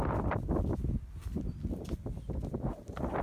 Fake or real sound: real